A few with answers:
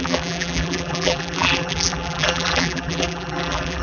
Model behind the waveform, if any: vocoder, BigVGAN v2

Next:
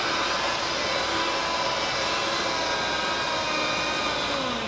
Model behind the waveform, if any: none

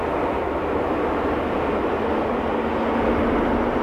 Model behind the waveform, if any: none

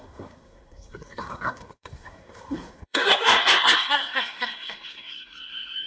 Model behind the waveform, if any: codec, SNAC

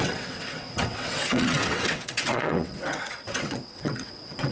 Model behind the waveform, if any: vocoder, WaveNeXt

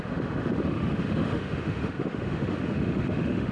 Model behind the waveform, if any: autoencoder, DAC-VAE